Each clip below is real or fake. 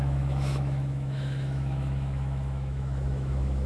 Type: fake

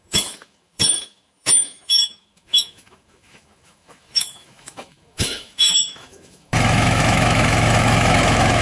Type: fake